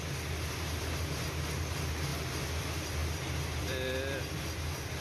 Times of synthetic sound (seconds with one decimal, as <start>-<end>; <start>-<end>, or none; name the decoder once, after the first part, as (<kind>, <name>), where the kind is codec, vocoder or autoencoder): 2.1-2.6 (vocoder, BigVGAN v2); 3.0-4.4